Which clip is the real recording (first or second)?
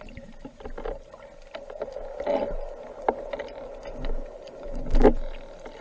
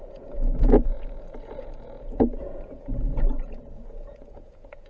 first